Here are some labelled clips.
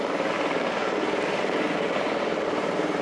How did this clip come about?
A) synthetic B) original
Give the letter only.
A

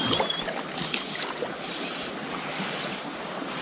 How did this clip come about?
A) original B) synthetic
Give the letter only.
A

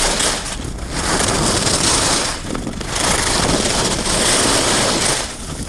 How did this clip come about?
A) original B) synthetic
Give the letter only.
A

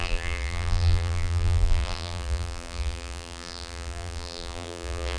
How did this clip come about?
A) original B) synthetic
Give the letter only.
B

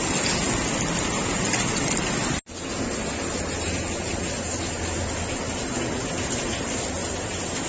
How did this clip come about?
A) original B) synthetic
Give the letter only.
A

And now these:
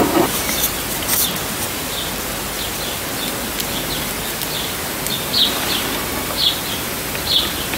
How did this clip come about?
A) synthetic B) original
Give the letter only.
B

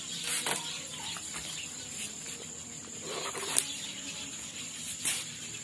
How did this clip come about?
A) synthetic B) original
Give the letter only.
B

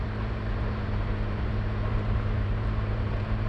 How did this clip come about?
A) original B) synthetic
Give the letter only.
B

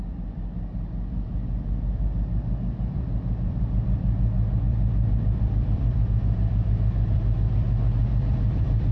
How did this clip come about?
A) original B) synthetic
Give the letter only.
B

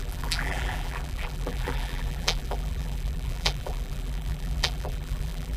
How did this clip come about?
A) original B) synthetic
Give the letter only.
B